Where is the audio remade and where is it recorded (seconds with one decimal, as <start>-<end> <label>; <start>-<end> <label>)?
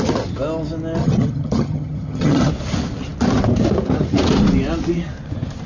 0.0-1.0 recorded; 1.0-2.5 remade; 2.5-5.7 recorded